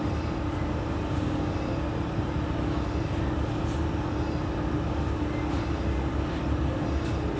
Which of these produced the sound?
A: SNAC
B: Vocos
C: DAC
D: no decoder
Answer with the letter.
D